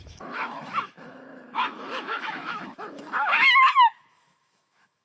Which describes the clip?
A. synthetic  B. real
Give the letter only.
A